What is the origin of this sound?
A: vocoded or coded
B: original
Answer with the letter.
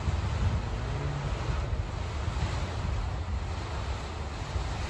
B